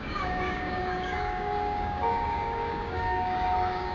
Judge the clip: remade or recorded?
remade